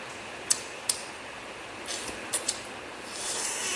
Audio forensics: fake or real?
real